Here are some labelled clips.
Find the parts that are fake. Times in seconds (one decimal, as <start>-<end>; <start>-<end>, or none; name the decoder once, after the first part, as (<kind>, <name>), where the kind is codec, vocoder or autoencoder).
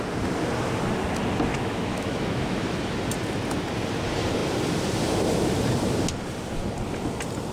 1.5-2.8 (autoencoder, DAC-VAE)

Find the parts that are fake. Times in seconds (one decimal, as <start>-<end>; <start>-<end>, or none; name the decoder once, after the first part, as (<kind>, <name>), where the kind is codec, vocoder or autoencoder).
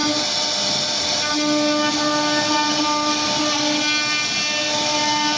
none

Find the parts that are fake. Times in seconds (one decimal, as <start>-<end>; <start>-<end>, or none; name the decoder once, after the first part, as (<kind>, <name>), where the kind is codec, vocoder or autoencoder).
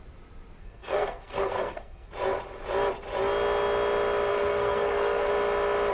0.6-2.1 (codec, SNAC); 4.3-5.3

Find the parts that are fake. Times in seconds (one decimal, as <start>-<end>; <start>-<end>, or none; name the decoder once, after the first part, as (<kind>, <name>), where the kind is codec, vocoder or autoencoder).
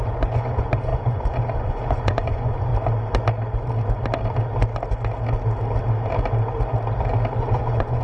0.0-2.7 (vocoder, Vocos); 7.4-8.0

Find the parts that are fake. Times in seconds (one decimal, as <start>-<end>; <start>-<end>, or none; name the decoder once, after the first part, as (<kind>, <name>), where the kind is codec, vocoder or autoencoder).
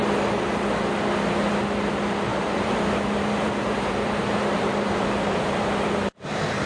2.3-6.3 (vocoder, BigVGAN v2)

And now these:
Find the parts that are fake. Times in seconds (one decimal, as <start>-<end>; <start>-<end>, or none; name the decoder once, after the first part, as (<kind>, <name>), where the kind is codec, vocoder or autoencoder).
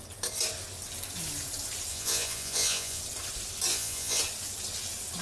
1.9-3.0 (vocoder, Vocos); 3.7-4.2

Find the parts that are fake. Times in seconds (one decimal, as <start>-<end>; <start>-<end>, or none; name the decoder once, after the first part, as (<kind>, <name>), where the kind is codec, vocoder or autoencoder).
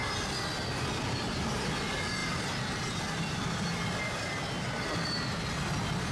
none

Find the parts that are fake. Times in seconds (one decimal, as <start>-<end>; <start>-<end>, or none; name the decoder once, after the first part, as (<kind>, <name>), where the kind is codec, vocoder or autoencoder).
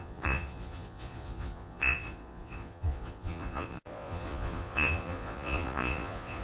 0.0-6.4 (vocoder, Vocos)